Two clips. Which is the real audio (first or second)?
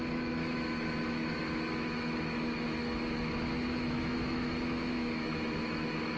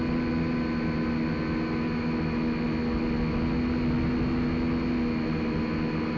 second